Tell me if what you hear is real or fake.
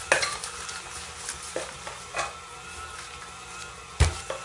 real